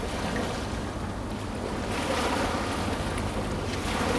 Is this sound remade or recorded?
recorded